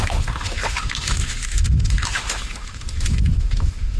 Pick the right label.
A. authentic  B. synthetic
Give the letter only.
B